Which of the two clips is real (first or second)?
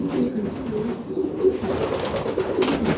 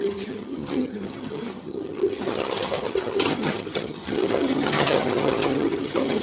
first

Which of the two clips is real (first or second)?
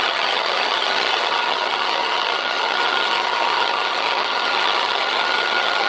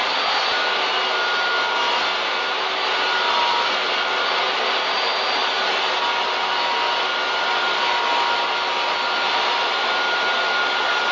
second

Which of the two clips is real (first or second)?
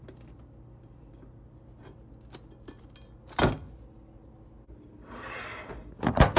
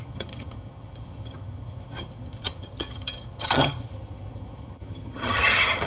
first